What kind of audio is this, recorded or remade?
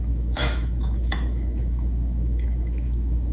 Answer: remade